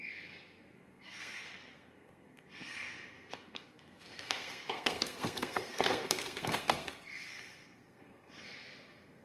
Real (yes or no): no